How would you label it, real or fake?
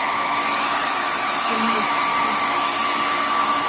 fake